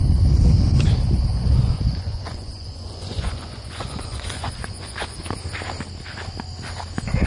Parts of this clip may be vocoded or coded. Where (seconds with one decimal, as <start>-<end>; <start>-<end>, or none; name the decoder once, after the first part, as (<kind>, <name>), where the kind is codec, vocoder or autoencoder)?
1.3-5.2 (vocoder, Vocos)